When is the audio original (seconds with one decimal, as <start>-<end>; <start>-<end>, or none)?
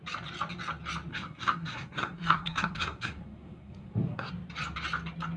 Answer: 0.0-1.1; 4.3-5.4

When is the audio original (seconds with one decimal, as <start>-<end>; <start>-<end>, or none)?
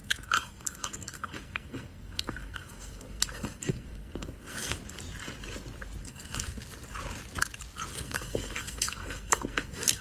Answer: 4.8-6.0; 6.6-7.9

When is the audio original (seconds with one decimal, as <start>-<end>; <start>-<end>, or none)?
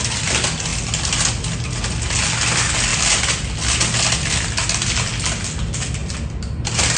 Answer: 0.0-6.0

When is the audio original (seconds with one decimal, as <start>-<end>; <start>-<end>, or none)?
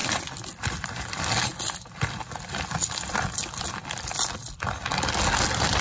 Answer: 0.0-5.8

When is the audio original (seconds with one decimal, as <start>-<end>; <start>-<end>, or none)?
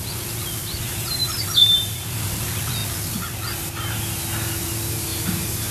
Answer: 0.0-0.6; 1.2-1.6; 2.4-5.1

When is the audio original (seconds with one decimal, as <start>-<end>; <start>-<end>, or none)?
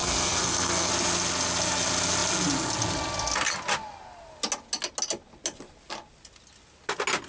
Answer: 0.9-7.3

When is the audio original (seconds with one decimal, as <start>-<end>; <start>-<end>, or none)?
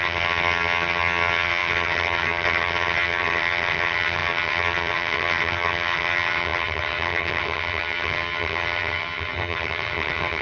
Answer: none